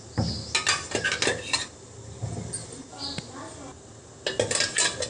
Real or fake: real